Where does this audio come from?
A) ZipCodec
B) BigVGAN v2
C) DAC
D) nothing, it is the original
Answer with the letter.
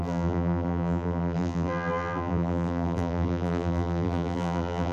B